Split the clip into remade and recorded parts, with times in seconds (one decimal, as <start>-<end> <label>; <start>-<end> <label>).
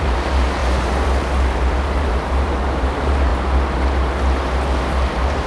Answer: 0.0-3.3 remade; 3.3-5.1 recorded; 5.1-5.5 remade